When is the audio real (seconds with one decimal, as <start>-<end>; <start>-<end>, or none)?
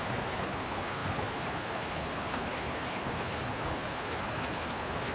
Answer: none